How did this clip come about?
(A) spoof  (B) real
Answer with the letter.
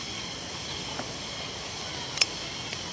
B